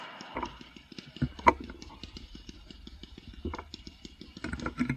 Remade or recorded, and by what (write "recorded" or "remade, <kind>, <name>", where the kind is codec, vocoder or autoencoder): remade, vocoder, BigVGAN v2